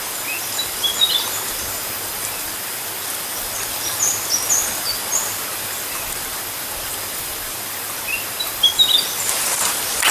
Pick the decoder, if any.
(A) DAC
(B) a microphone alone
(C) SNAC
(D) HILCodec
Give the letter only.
B